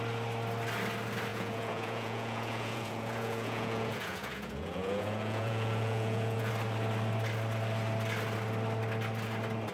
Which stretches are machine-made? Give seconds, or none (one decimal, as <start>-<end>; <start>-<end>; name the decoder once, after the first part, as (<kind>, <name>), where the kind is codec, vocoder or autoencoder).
1.3-6.5 (vocoder, Vocos)